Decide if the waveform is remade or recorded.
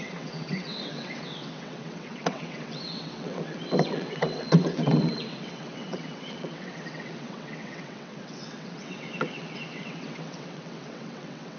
remade